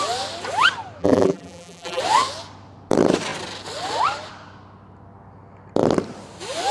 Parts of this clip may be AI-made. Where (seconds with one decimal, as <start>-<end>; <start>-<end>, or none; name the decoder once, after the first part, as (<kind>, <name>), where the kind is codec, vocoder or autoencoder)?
1.0-2.0 (vocoder, BigVGAN v2)